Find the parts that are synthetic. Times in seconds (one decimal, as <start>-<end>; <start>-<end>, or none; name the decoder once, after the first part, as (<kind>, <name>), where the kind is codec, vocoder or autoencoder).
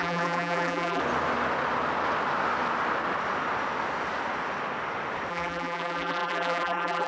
0.0-1.0 (vocoder, BigVGAN v2); 5.3-7.1